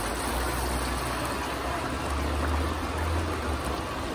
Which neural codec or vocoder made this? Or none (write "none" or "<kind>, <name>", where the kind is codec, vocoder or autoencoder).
none